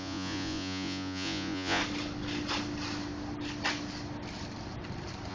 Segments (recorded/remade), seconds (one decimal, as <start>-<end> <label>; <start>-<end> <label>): 0.0-1.8 remade; 1.8-5.3 recorded